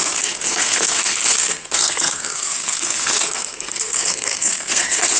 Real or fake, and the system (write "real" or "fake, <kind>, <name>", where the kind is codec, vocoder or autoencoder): fake, codec, SNAC